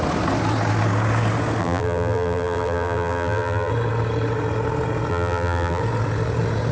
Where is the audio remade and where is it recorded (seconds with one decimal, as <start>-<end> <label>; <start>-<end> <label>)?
0.0-1.6 recorded; 1.6-3.7 remade; 3.7-5.1 recorded; 5.1-5.8 remade; 5.8-6.7 recorded